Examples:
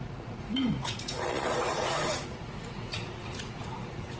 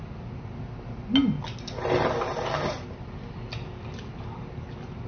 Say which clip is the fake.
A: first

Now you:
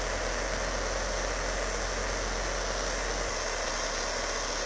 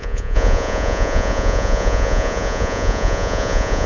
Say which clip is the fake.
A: second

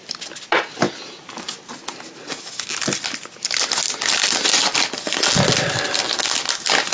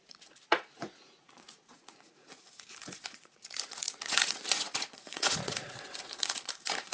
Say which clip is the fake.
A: second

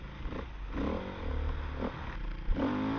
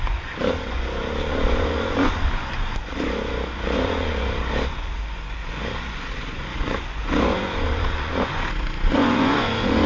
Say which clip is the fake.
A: second